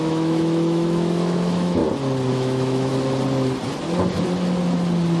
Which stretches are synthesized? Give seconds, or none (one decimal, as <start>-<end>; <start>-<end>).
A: 0.0-1.8; 2.3-2.9